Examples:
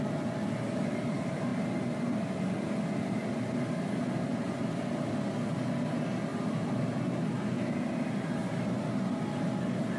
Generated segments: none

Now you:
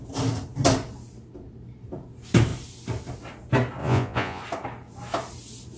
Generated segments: 3.8-4.4 (vocoder, Vocos)

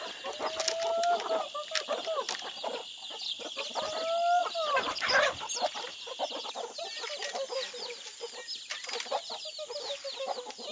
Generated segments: none

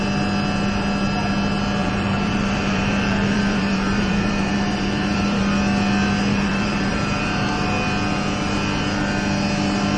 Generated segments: 1.8-5.5 (vocoder, BigVGAN v2); 6.3-7.2